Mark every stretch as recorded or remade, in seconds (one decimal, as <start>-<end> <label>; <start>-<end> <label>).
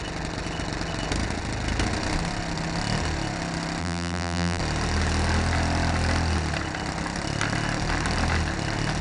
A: 0.0-3.8 recorded; 3.8-4.6 remade; 4.6-9.0 recorded